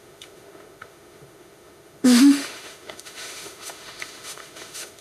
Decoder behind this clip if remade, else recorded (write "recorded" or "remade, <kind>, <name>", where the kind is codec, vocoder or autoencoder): remade, autoencoder, DAC-VAE